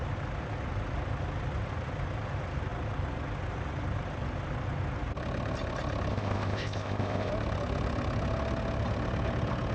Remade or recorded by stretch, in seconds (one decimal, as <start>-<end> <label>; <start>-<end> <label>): 0.0-6.1 recorded; 6.1-7.3 remade; 7.3-9.7 recorded